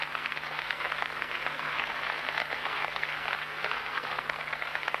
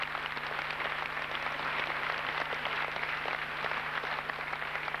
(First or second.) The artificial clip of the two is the first